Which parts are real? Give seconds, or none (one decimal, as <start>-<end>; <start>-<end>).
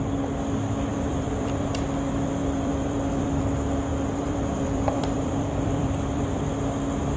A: 0.0-0.9; 3.4-3.9; 6.4-7.2